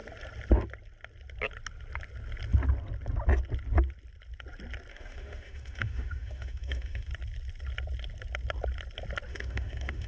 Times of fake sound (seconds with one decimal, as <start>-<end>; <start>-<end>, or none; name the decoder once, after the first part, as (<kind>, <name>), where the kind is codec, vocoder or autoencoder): 4.9-7.1 (autoencoder, DAC-VAE); 9.3-10.1